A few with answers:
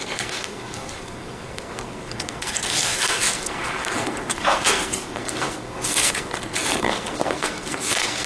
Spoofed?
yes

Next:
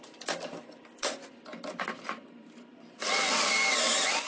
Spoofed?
no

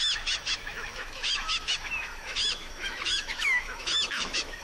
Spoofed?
yes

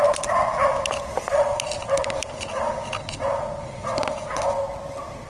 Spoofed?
no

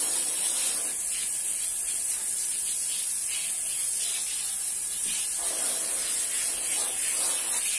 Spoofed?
no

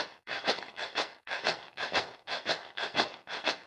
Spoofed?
yes